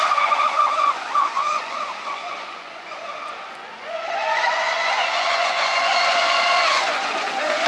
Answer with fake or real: fake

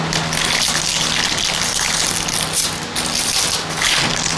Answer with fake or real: real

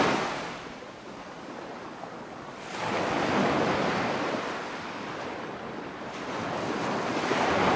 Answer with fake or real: real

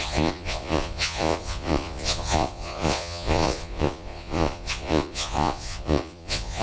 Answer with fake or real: fake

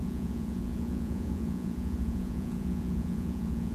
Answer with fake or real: fake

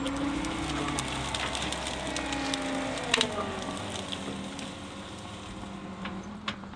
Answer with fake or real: real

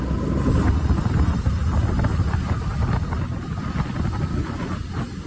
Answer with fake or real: real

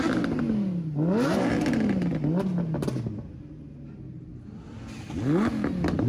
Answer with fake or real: real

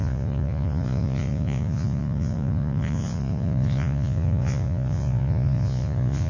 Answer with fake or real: fake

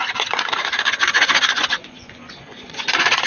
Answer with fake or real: fake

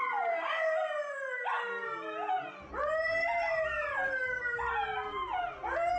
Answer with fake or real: real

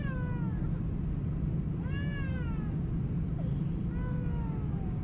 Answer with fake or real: real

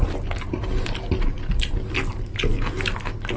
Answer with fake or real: real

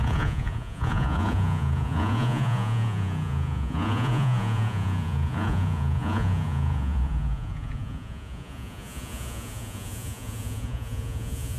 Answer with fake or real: fake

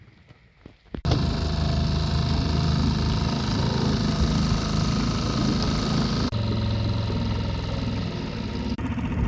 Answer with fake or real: real